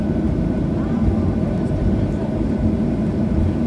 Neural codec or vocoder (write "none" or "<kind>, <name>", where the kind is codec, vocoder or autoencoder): vocoder, BigVGAN v2